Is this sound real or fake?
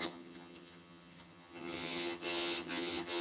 fake